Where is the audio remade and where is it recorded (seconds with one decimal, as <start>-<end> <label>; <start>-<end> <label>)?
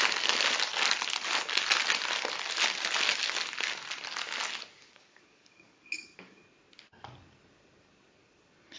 0.0-4.8 recorded; 4.8-6.4 remade; 6.4-8.8 recorded